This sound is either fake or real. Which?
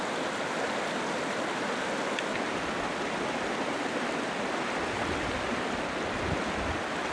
real